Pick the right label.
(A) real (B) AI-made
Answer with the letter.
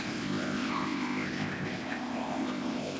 B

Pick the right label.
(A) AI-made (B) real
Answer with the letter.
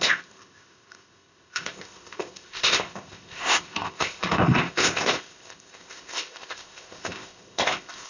A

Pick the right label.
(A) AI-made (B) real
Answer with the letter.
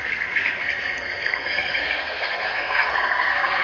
A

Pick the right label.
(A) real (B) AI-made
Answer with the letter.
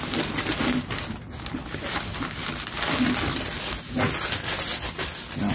A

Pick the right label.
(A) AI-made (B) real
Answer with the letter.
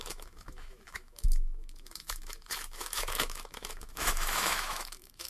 A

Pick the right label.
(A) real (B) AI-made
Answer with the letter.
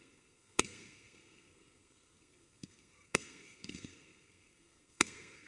B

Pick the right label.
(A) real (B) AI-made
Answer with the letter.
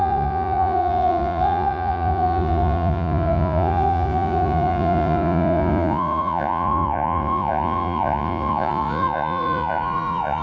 B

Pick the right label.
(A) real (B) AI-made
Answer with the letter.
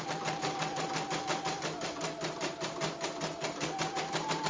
A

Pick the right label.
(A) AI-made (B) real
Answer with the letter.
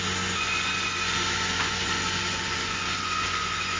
A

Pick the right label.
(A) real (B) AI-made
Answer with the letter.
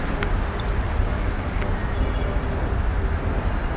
A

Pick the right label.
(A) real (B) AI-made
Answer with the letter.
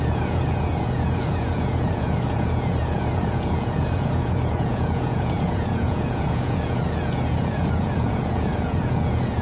B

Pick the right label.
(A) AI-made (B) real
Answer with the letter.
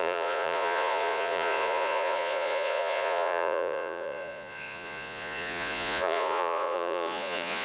A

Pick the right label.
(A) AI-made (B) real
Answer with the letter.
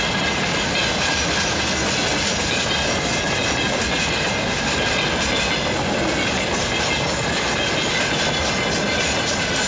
B